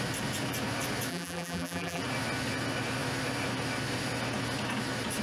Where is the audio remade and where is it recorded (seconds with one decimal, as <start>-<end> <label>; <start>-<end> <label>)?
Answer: 0.0-1.1 recorded; 1.1-2.0 remade; 2.0-5.2 recorded